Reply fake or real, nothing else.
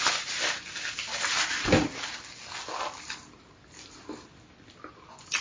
real